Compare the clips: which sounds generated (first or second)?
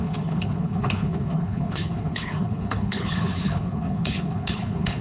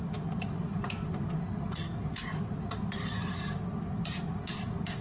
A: first